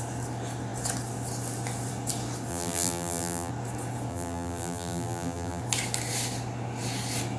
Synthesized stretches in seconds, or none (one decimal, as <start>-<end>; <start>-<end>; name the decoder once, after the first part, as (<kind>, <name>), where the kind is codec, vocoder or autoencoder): 2.5-3.5 (vocoder, BigVGAN v2); 4.1-5.6